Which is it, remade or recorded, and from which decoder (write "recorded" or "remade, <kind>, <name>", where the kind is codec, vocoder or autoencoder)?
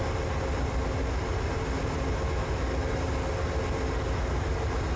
recorded